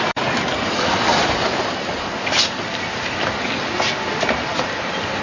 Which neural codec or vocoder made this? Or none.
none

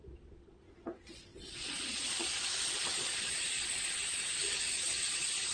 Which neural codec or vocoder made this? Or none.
vocoder, Vocos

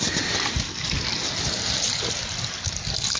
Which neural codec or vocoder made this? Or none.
none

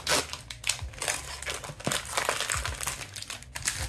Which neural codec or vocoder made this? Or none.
none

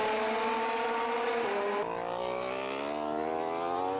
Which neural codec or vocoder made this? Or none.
none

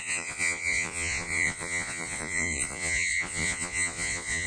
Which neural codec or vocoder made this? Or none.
vocoder, Vocos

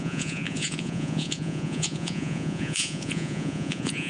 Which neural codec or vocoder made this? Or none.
vocoder, Vocos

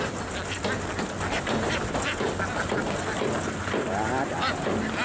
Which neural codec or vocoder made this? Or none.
none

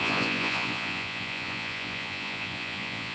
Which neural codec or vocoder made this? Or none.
vocoder, Vocos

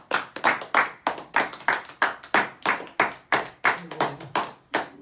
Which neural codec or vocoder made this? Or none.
none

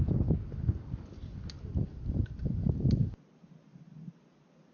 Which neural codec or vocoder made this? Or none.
none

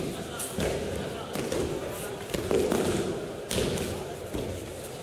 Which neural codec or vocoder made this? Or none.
none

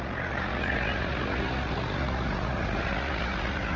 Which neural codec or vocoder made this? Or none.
vocoder, Vocos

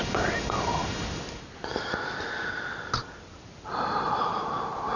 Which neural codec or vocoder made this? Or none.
none